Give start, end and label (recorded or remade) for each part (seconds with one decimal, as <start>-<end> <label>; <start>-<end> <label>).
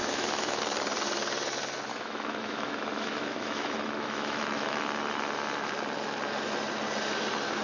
0.0-0.6 remade; 0.6-1.9 recorded; 1.9-4.8 remade; 4.8-7.6 recorded